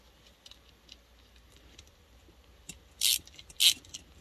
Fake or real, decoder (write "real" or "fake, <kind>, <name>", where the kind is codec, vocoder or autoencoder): real